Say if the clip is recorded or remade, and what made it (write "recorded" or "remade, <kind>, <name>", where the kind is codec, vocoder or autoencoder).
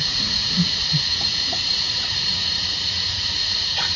remade, vocoder, Vocos